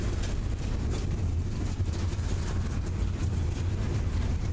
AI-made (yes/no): no